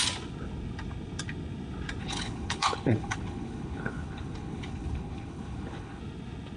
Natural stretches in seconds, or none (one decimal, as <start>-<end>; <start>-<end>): 0.0-2.0; 6.0-6.6